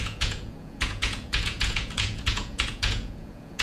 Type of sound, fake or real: fake